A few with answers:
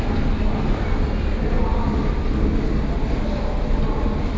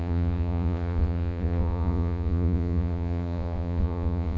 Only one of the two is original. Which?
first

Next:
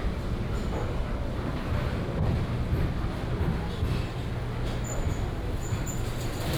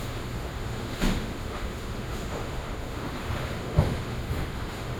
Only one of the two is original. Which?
first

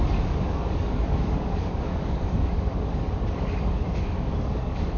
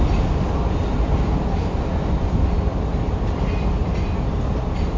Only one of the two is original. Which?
second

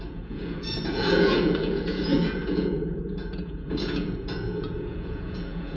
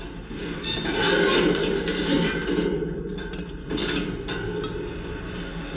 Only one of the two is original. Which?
second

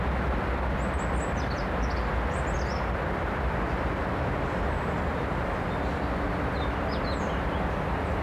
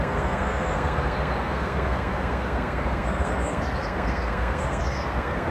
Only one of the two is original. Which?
first